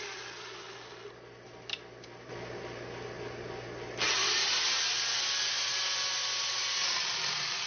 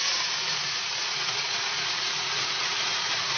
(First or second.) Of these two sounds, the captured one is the first